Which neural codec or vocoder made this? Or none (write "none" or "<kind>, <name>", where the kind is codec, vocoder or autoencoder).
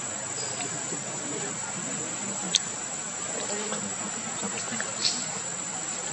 none